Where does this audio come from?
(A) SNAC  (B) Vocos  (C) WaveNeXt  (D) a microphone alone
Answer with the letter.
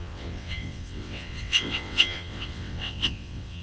C